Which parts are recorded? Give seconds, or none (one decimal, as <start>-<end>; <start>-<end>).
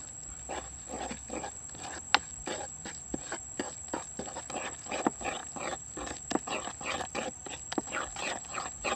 0.0-9.0